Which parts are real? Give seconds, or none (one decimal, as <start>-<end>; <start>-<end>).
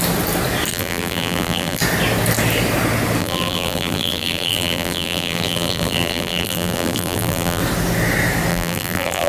0.0-0.7; 1.8-3.2; 7.6-8.5